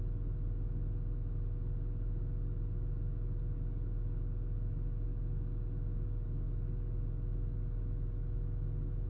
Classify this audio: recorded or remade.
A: recorded